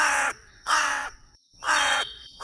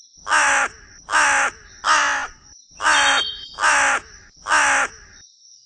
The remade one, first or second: first